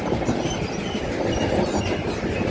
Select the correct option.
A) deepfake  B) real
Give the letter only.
B